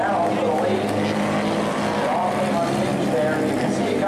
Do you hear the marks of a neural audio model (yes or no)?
no